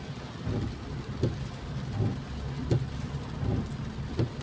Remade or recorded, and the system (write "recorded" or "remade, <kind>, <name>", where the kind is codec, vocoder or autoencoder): recorded